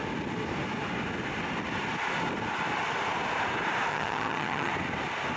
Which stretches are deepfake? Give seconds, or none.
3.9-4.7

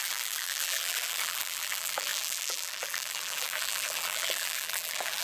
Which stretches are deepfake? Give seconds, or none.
0.0-5.2

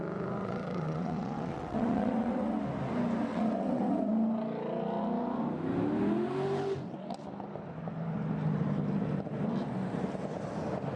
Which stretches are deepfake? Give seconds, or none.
0.4-2.6; 3.3-4.1

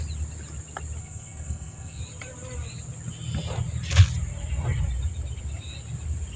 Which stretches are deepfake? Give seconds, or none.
1.0-2.0